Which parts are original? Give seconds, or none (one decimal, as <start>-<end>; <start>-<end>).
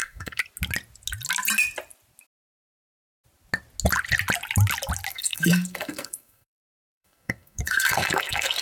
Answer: 0.4-5.1